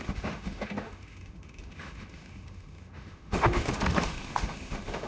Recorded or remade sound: remade